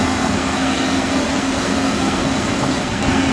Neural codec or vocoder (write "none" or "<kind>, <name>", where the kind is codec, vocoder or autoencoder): codec, SNAC